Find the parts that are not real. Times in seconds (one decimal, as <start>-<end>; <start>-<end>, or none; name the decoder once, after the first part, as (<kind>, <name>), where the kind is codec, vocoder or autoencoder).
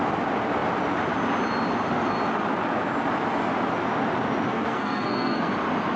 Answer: 4.5-5.5 (codec, SNAC)